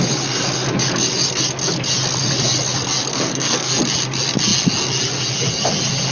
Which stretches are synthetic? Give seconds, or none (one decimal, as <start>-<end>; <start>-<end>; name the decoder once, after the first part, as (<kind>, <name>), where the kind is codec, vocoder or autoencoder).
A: 3.1-3.7 (codec, SNAC)